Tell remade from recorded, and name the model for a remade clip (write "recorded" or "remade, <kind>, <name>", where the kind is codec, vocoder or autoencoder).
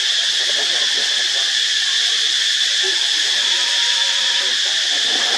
recorded